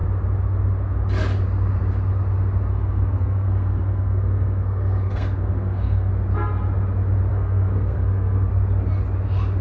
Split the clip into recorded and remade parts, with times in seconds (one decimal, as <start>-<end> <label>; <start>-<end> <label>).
0.0-2.7 recorded; 2.7-6.1 remade; 6.1-7.3 recorded; 7.3-8.5 remade; 8.5-9.6 recorded